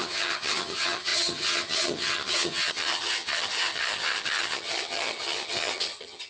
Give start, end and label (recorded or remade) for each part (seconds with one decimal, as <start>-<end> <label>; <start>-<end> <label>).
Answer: 0.0-6.3 remade